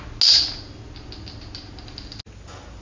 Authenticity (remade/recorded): recorded